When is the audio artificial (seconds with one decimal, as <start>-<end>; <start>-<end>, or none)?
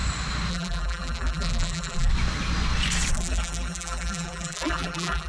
0.5-2.1; 3.1-5.3